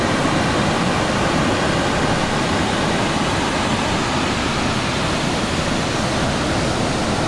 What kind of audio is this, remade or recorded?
recorded